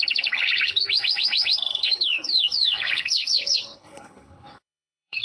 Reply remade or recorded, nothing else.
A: remade